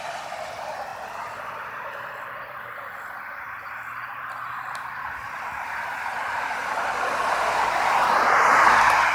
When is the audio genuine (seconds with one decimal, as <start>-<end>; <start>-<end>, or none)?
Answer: 0.0-9.1